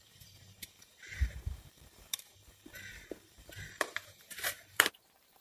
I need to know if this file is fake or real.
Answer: fake